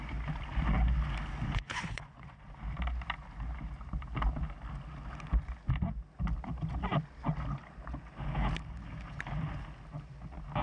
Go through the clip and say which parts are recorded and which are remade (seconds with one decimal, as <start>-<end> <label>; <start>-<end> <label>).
0.0-1.5 recorded; 1.5-2.4 remade; 2.4-10.6 recorded